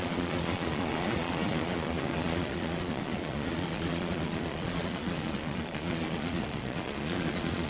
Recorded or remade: remade